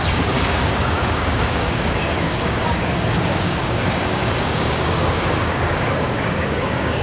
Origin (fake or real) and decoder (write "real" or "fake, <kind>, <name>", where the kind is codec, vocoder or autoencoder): fake, codec, DAC